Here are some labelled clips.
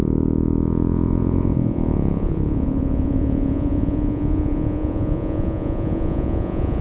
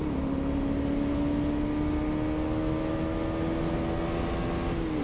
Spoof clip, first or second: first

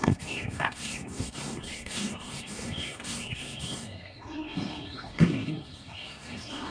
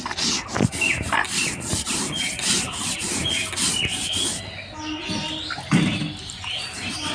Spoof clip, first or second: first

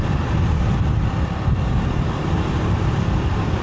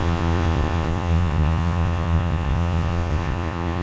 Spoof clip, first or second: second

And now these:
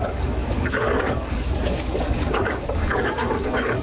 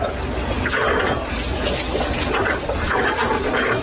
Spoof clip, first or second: first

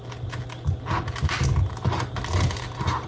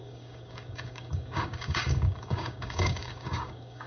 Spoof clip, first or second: second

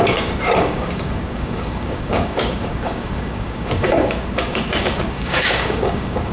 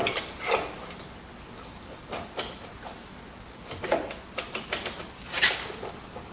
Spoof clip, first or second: first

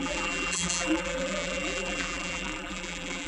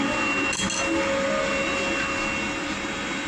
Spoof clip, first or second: first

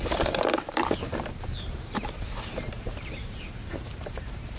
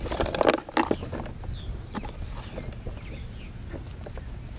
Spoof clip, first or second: first